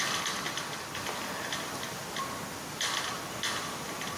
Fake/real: real